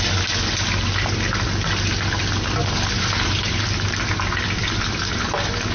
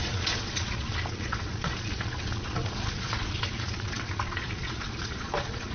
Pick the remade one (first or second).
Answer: second